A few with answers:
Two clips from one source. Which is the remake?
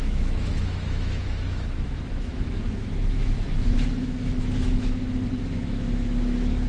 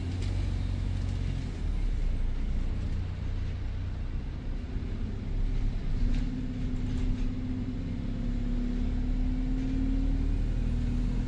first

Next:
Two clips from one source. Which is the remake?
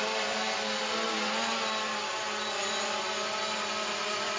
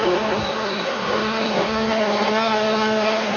second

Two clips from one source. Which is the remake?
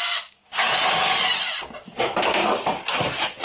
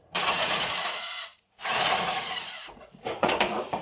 second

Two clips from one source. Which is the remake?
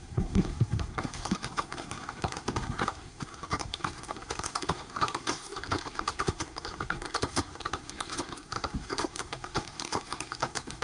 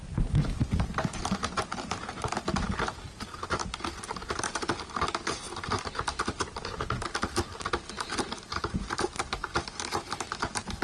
first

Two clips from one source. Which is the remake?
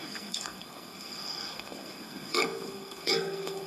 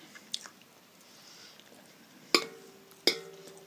first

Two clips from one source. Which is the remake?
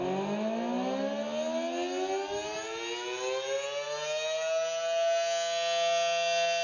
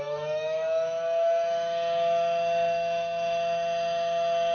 second